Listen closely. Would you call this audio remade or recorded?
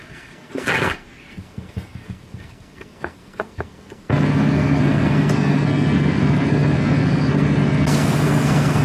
remade